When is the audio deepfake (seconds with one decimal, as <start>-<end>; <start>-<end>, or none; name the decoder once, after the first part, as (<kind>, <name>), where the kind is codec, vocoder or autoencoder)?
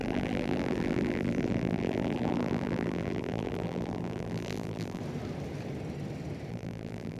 0.0-5.0 (vocoder, BigVGAN v2); 6.5-7.2